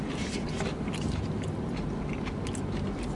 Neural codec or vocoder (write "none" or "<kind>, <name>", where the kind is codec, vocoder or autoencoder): none